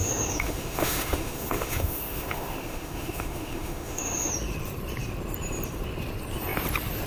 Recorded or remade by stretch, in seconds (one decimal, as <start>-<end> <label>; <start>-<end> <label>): 0.0-4.3 remade; 4.3-7.1 recorded